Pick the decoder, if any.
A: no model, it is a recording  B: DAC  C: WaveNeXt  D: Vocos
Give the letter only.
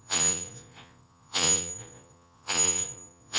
D